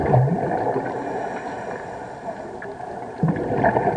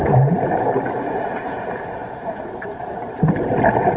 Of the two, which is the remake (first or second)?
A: second